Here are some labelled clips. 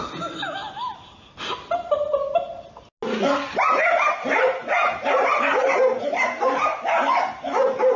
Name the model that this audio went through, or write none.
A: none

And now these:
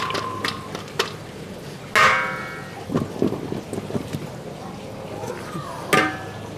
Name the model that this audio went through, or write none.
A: none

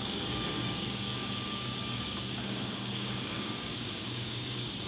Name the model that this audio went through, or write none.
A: codec, DAC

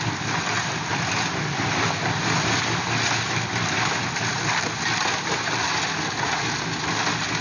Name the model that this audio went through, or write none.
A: none